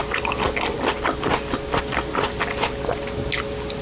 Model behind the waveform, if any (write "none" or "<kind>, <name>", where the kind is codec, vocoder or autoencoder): none